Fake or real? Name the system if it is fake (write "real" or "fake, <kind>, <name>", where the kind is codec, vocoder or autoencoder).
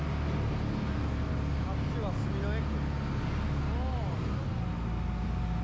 real